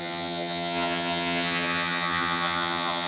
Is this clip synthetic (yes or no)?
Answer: yes